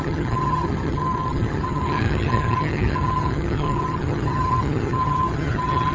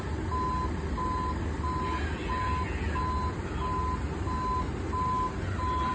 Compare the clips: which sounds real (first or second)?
second